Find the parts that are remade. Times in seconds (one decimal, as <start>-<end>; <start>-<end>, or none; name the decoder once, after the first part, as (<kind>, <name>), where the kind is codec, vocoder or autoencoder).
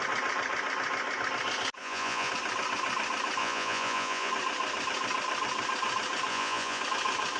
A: 1.8-2.3 (vocoder, Vocos); 3.4-4.3; 6.3-6.8